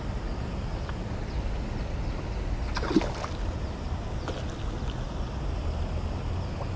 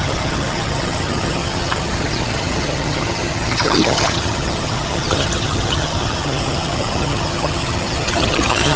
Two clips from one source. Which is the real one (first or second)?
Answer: first